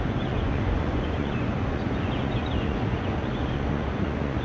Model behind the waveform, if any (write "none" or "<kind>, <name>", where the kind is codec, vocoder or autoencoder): vocoder, Vocos